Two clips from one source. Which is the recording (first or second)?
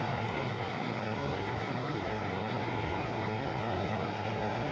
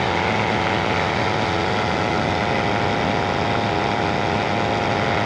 second